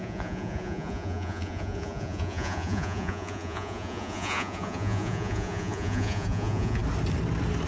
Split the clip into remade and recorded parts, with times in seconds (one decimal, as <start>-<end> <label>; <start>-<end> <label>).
0.0-6.8 remade; 6.8-7.7 recorded